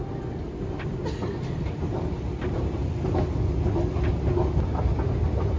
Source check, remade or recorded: recorded